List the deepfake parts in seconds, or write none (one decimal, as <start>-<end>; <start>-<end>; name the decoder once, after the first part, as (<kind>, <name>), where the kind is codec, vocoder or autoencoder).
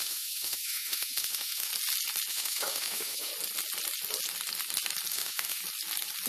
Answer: 0.0-1.7 (autoencoder, DAC-VAE); 2.3-3.3; 5.1-5.6